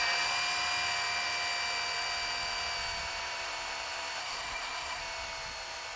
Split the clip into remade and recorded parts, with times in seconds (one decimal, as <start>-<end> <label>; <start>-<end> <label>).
0.0-4.2 recorded; 4.2-5.0 remade; 5.0-6.0 recorded